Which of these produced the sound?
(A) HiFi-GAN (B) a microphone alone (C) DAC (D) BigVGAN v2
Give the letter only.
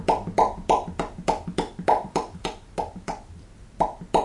D